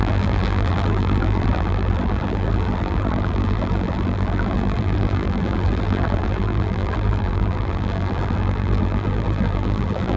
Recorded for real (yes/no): no